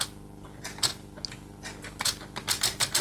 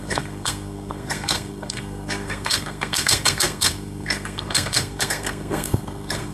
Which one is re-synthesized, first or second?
second